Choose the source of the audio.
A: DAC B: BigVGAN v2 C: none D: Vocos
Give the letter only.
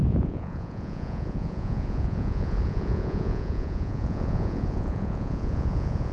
D